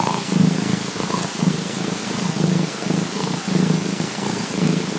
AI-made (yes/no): yes